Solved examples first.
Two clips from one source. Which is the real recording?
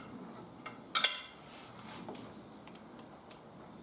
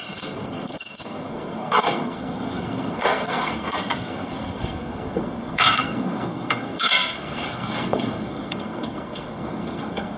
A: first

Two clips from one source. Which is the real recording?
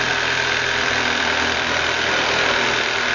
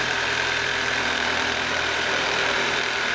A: first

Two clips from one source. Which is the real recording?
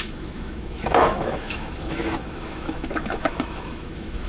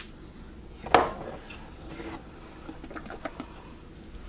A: second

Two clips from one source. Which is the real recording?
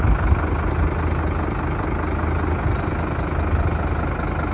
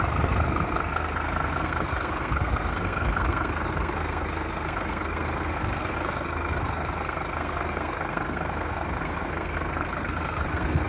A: first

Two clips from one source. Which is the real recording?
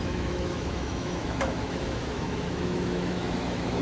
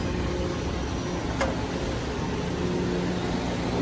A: second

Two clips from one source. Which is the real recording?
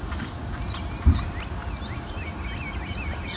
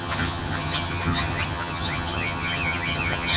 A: first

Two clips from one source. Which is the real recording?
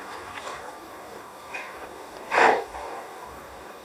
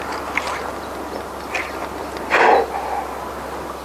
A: second